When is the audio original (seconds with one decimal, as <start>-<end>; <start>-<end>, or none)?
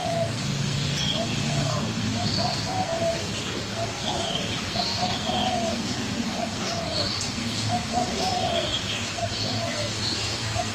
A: none